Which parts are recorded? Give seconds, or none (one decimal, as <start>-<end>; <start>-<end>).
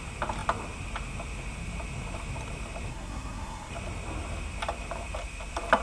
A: 0.0-2.9; 3.7-5.8